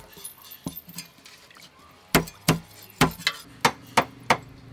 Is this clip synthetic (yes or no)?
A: no